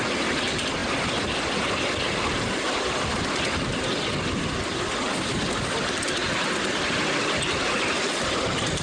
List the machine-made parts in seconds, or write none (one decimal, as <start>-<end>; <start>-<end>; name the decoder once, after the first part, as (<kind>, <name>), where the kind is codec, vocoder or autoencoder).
none